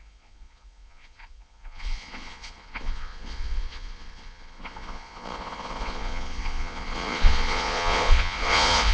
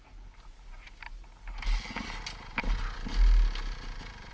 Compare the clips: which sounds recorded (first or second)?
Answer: second